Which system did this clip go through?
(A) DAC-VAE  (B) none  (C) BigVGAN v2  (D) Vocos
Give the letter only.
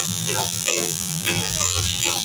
C